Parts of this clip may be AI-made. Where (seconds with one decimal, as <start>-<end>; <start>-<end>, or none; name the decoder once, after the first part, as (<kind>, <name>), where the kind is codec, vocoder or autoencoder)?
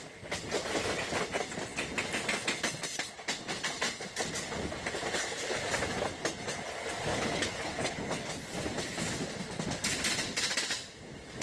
7.1-8.3 (codec, HILCodec)